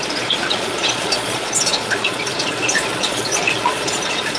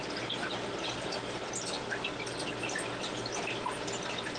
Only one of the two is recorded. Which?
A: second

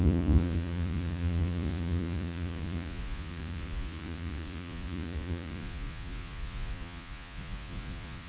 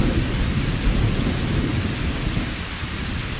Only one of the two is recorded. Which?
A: second